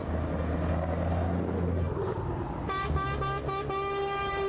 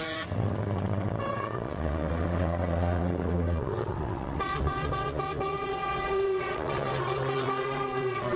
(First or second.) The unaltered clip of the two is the first